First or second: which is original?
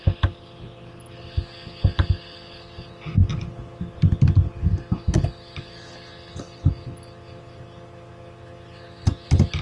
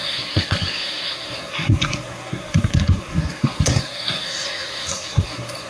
first